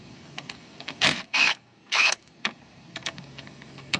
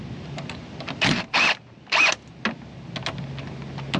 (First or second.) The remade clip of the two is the first